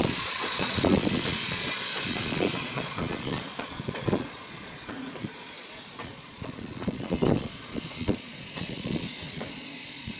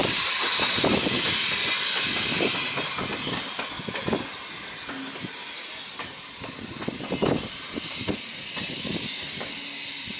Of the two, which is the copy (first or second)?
first